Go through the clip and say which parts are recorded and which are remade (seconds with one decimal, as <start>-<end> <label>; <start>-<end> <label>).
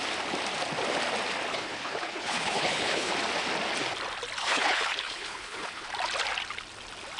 0.0-1.5 recorded; 1.5-3.1 remade; 3.1-4.4 recorded; 4.4-5.9 remade; 5.9-7.2 recorded